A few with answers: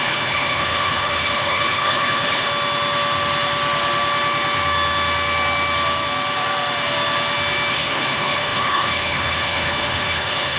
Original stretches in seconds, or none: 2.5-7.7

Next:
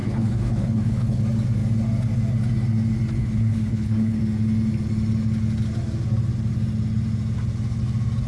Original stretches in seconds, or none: 1.2-3.2; 4.2-8.3

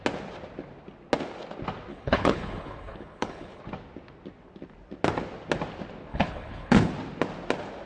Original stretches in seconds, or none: 0.0-1.9; 3.6-6.1; 6.9-7.9